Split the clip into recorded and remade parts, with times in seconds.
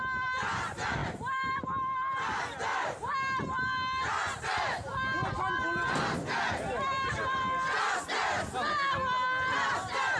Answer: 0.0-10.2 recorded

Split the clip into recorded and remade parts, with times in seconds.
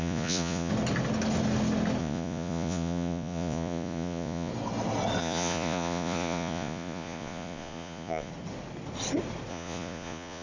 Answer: 0.0-0.7 remade; 0.7-2.0 recorded; 2.0-4.5 remade; 4.5-5.2 recorded; 5.2-8.3 remade; 8.3-9.5 recorded; 9.5-10.4 remade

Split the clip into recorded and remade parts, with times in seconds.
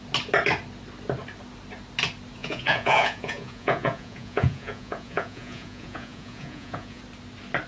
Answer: 0.0-2.4 recorded; 2.4-7.0 remade; 7.0-7.7 recorded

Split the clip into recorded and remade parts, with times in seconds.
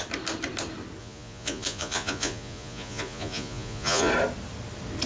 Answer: 0.0-1.0 recorded; 1.0-4.1 remade; 4.1-5.1 recorded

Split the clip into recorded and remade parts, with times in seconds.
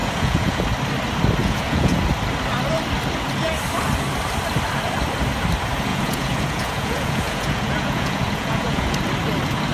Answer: 0.0-0.6 remade; 0.6-1.4 recorded; 1.4-2.0 remade; 2.0-5.9 recorded; 5.9-9.0 remade; 9.0-9.7 recorded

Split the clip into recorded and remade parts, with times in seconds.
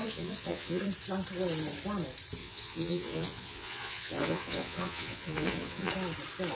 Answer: 0.0-0.8 remade; 0.8-2.4 recorded; 2.4-5.9 remade; 5.9-6.5 recorded